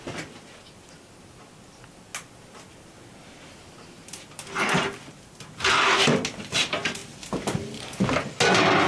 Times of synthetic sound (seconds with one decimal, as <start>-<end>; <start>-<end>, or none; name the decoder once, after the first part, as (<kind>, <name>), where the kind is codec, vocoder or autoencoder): none